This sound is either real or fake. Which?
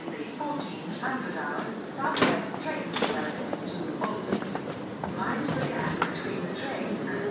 real